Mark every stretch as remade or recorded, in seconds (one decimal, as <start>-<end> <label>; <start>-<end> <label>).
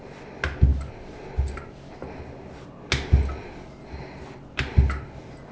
0.0-5.5 recorded